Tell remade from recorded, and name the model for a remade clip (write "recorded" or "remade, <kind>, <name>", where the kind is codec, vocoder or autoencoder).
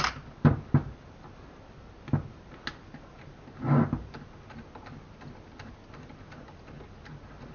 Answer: recorded